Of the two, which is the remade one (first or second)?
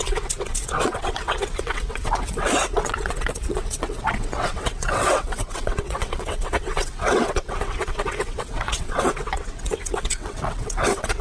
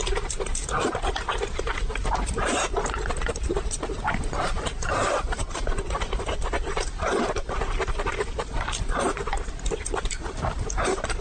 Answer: first